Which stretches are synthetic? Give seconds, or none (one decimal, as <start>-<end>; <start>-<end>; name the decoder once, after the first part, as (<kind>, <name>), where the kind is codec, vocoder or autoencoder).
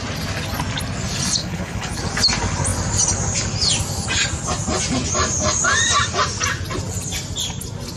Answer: 1.4-2.0 (codec, HILCodec)